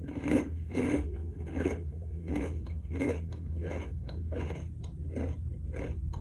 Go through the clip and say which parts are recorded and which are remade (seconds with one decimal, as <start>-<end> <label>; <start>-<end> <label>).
0.0-4.6 remade; 4.6-6.2 recorded